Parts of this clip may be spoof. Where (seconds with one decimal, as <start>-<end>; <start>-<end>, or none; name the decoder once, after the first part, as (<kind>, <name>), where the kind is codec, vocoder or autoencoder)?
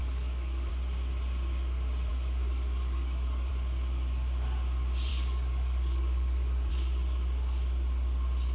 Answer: 0.0-0.7 (codec, DAC); 2.1-3.5; 5.1-6.7